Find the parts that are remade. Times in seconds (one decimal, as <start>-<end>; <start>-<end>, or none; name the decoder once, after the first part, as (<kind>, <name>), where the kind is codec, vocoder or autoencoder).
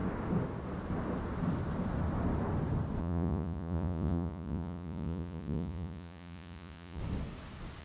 3.0-7.0 (vocoder, Vocos)